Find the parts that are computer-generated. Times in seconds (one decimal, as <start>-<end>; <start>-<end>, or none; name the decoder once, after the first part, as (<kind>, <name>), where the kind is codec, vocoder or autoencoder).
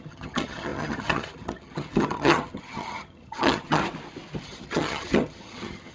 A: 0.0-3.8 (vocoder, HiFi-GAN); 4.4-5.9